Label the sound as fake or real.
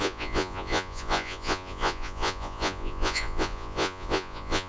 fake